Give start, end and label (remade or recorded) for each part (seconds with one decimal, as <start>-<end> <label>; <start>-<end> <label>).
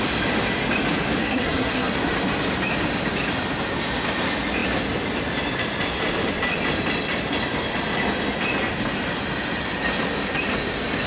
0.0-1.2 recorded; 1.2-1.9 remade; 1.9-11.1 recorded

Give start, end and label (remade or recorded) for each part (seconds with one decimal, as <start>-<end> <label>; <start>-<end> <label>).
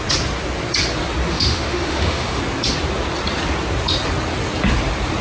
0.0-1.3 recorded; 1.3-2.4 remade; 2.4-5.2 recorded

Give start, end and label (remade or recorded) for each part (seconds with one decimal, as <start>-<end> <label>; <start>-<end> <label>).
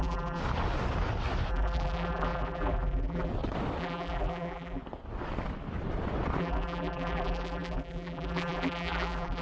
0.0-0.4 remade; 0.4-1.5 recorded; 1.5-3.3 remade; 3.3-3.8 recorded; 3.8-4.8 remade; 4.8-6.4 recorded; 6.4-9.4 remade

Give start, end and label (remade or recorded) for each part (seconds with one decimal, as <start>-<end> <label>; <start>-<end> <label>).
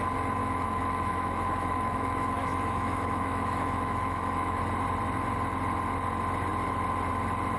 0.0-0.4 recorded; 0.4-4.6 remade; 4.6-7.6 recorded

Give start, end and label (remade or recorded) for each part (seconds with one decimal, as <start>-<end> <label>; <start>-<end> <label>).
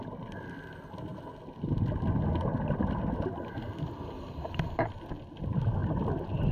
0.0-5.8 recorded; 5.8-6.5 remade